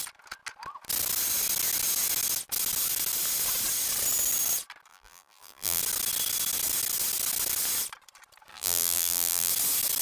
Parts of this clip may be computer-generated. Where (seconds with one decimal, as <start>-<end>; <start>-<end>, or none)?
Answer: 4.9-5.8; 8.5-9.5